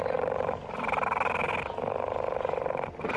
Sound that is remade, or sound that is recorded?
recorded